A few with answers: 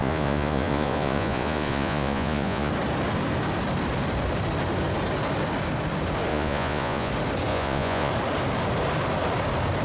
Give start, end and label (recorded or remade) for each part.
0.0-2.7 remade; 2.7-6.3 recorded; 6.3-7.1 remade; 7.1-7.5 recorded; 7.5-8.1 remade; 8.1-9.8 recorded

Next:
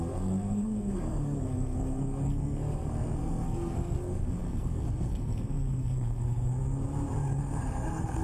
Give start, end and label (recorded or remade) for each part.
0.0-6.8 remade; 6.8-7.4 recorded; 7.4-8.2 remade